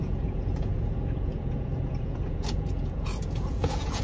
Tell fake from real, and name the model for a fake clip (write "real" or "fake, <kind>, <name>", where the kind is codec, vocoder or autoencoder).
fake, vocoder, Vocos